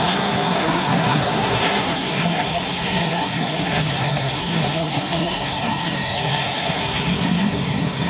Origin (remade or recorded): remade